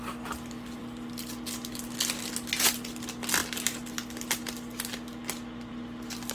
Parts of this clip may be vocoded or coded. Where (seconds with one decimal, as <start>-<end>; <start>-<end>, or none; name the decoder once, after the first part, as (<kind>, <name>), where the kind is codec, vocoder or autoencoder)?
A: none